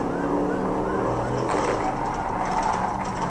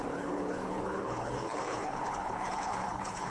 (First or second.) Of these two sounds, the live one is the first